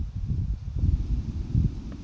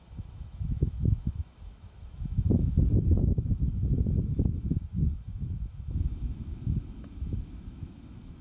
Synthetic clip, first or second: second